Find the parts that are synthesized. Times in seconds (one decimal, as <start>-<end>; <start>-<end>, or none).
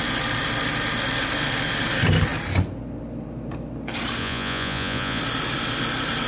4.2-5.2